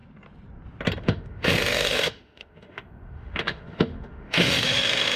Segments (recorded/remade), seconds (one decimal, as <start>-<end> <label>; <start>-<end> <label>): 0.0-1.0 recorded; 1.0-5.2 remade